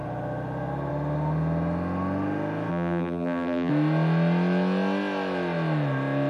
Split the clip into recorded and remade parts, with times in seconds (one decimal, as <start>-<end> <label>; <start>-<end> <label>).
0.0-2.7 recorded; 2.7-3.7 remade; 3.7-6.3 recorded